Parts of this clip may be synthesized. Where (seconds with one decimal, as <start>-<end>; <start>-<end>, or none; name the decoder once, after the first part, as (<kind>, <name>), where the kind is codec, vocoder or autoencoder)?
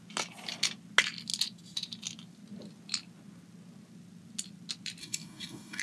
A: 5.0-5.8 (codec, DAC)